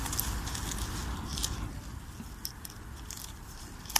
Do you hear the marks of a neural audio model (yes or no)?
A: no